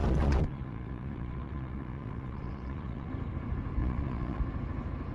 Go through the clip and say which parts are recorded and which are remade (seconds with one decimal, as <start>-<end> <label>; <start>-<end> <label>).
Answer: 0.0-3.1 remade; 3.1-3.8 recorded; 3.8-4.4 remade; 4.4-5.1 recorded